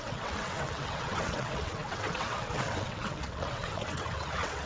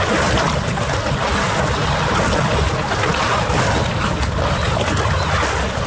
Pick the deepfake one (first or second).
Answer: first